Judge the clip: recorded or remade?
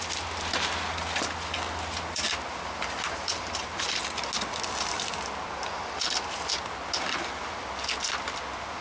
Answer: recorded